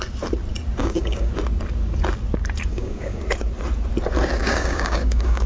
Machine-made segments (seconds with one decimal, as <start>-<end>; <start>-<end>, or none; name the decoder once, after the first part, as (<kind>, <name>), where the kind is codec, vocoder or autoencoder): 0.8-1.3 (codec, DAC); 2.7-3.2; 4.4-5.5